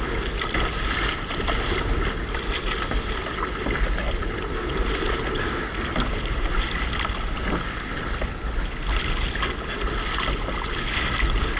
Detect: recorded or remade recorded